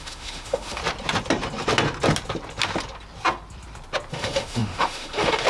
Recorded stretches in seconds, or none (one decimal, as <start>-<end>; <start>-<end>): 0.8-4.1